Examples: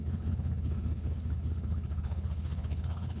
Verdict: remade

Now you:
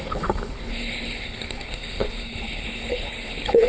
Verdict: remade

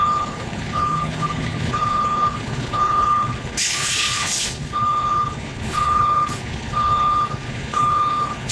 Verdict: remade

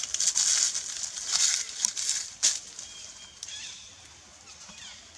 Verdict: recorded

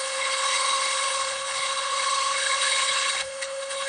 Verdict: remade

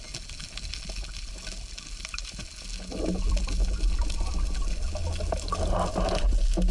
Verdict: recorded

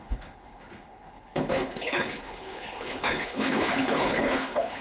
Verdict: remade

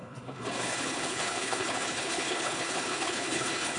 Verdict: remade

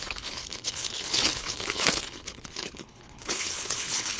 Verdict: remade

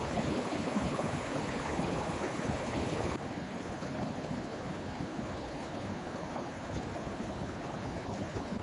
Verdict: remade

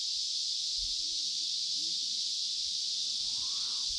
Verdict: recorded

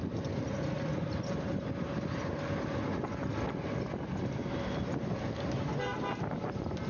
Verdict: recorded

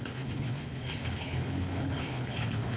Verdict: remade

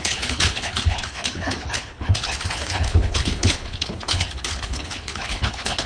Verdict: remade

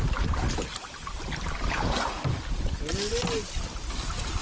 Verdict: recorded